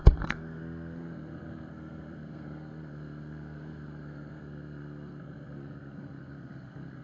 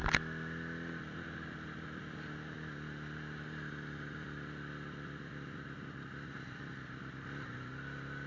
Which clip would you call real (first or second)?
second